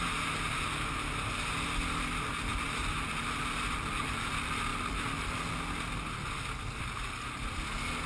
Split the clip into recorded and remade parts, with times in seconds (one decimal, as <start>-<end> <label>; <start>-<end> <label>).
0.0-8.1 recorded